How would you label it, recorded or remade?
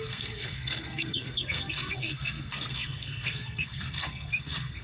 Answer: remade